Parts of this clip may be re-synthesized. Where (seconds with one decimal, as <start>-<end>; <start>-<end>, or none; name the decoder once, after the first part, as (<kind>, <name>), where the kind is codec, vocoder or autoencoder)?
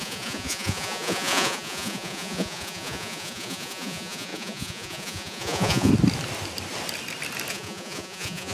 0.0-5.9 (vocoder, Vocos); 7.5-8.5